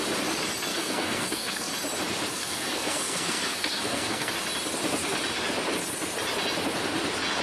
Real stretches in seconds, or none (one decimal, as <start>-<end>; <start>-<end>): 0.0-0.7; 1.7-2.3; 4.3-7.4